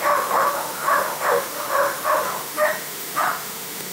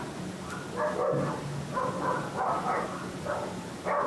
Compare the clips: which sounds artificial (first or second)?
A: first